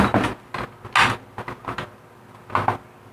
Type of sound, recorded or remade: recorded